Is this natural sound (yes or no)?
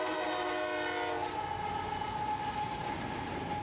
yes